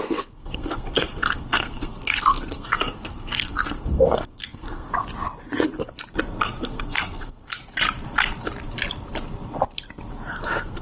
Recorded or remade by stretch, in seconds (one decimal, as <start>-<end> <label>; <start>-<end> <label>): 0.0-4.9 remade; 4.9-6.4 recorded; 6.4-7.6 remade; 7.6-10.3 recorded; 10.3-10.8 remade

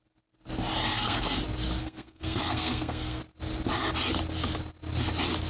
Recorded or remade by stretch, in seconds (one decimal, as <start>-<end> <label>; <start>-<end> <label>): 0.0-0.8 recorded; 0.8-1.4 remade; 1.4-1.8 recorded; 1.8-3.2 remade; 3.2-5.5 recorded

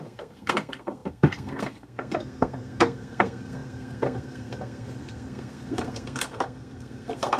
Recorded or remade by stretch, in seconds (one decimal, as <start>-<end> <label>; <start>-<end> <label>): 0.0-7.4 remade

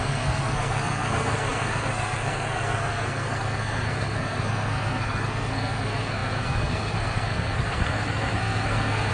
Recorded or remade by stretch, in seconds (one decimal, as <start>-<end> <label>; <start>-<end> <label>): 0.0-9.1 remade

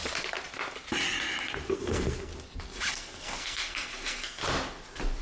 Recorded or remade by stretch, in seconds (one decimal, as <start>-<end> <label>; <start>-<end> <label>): 0.0-1.7 recorded; 1.7-2.3 remade; 2.3-2.9 recorded; 2.9-4.4 remade; 4.4-5.2 recorded